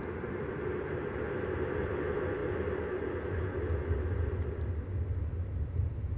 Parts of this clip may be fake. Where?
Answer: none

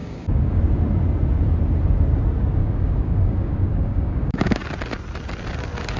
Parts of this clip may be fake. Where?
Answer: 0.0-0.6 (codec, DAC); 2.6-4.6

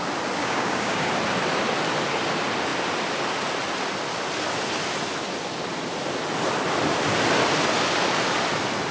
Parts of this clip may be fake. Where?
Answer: 0.4-1.1 (codec, DAC)

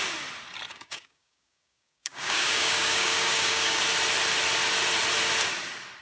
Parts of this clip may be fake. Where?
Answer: 0.7-3.8 (codec, DAC)